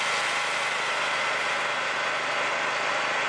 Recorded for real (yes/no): yes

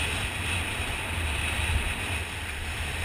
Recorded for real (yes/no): yes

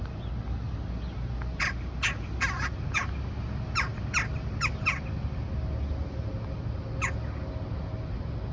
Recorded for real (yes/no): yes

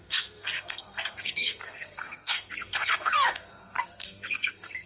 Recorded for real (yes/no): no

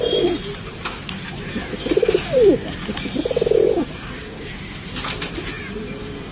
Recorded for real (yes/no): yes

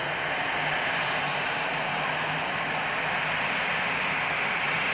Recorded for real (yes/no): yes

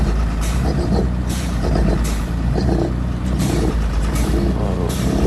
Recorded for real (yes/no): no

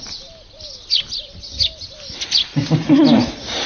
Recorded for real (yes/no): yes